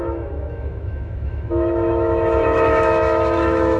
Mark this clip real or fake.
fake